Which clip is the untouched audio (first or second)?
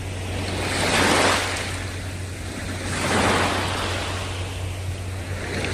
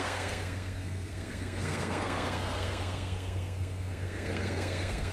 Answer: first